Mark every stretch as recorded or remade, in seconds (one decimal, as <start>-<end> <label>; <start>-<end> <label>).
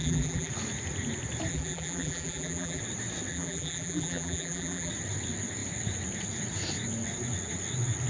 0.0-0.5 remade; 0.5-1.5 recorded; 1.5-2.8 remade; 2.8-3.3 recorded; 3.3-4.9 remade; 4.9-8.1 recorded